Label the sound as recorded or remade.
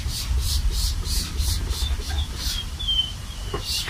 remade